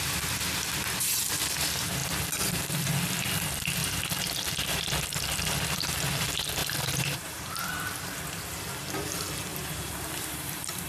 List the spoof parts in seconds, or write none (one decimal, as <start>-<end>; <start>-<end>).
6.6-7.4; 9.5-10.9